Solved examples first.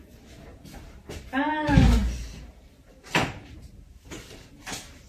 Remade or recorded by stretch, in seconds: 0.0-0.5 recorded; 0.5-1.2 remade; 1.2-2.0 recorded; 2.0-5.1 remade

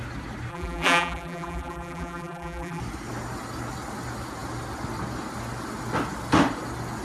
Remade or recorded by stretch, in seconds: 0.0-0.5 recorded; 0.5-2.8 remade; 2.8-7.0 recorded